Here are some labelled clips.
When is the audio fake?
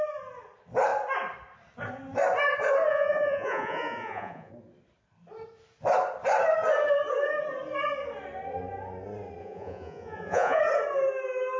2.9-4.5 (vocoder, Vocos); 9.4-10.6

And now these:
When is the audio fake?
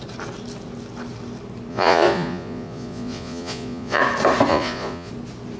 1.7-4.0 (vocoder, Vocos); 4.5-5.1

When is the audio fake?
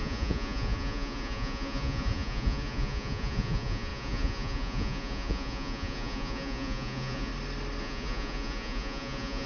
0.0-7.3 (vocoder, Vocos); 7.8-9.5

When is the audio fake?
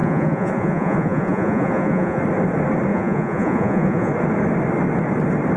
0.0-2.2 (vocoder, Vocos); 2.9-4.1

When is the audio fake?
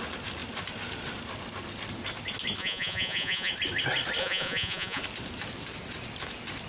2.6-3.5 (vocoder, Vocos); 4.2-5.0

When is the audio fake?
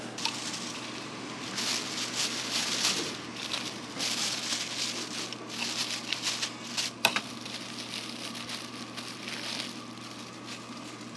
none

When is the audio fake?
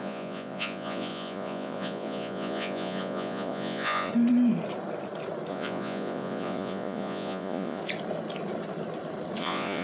0.0-4.1 (vocoder, Vocos); 5.5-7.8; 9.4-9.8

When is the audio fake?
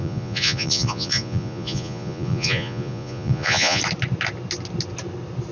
0.0-3.8 (vocoder, Vocos)